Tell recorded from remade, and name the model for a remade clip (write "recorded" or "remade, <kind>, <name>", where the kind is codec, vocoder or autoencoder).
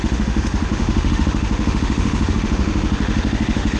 remade, autoencoder, DAC-VAE